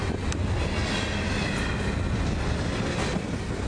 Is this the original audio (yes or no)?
yes